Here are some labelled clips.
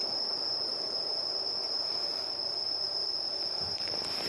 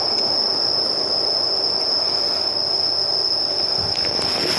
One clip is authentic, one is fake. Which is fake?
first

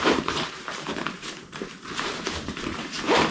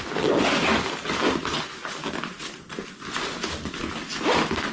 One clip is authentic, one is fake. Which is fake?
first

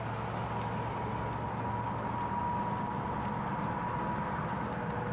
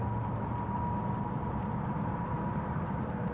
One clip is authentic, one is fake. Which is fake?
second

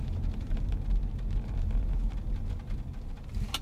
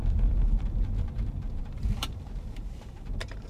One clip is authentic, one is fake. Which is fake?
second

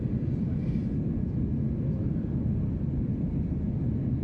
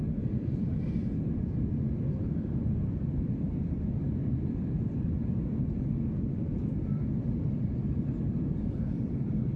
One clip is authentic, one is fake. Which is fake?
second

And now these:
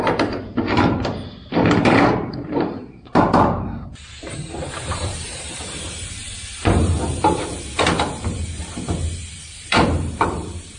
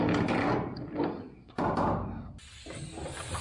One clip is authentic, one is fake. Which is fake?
first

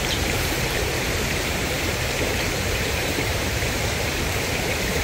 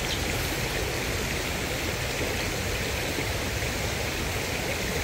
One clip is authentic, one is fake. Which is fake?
first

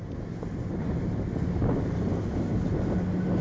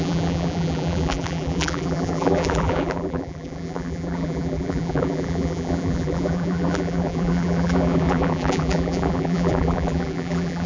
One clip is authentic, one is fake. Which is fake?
second